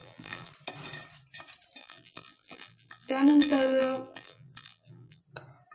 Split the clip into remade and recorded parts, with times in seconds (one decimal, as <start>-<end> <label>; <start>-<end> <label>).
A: 0.0-0.5 remade; 0.5-1.8 recorded; 1.8-5.2 remade; 5.2-5.7 recorded